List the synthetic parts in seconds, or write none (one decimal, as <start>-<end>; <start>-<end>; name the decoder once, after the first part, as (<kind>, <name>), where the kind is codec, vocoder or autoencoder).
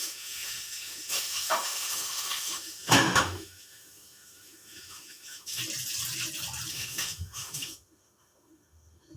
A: 0.0-5.6 (autoencoder, DAC-VAE); 6.7-9.2